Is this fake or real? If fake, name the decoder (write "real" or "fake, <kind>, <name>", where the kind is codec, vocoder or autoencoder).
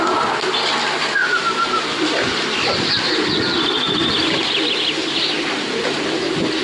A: real